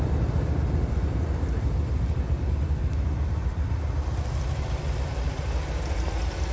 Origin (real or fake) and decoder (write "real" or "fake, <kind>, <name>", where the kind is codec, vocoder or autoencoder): real